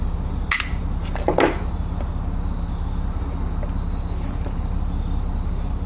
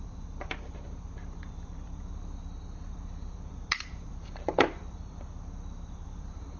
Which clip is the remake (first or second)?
second